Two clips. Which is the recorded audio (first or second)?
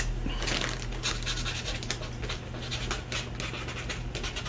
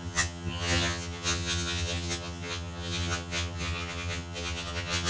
first